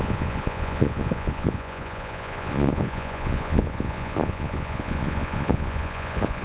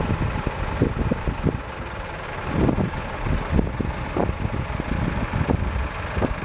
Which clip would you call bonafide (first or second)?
second